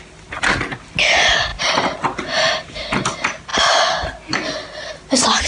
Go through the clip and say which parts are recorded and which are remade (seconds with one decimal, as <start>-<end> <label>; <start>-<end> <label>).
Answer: 0.0-5.5 recorded